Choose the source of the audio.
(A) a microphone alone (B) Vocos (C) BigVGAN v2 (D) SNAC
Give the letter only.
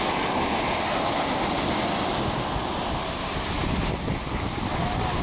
A